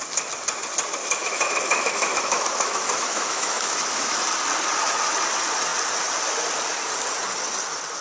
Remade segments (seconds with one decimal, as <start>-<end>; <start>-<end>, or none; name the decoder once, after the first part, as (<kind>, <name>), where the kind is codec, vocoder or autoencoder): 1.0-4.2 (autoencoder, DAC-VAE)